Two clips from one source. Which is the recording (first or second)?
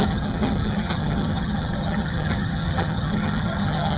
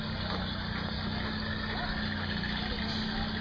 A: second